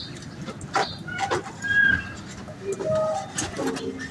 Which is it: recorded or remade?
recorded